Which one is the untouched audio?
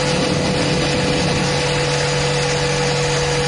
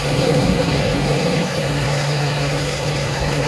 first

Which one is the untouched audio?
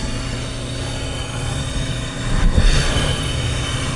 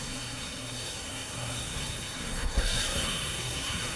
first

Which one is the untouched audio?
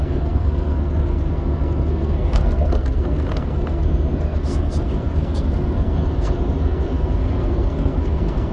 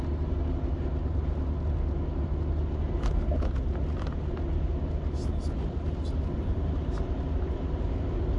second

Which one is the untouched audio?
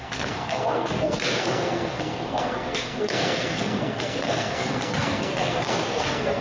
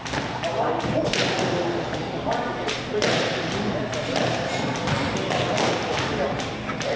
second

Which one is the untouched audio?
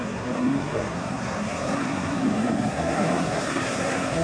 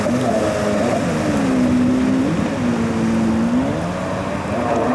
second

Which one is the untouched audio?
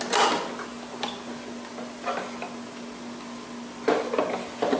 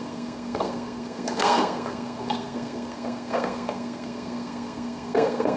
first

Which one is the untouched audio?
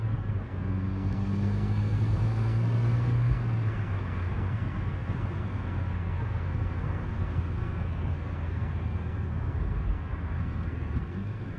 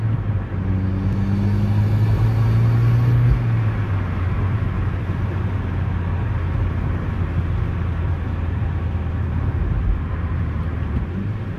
second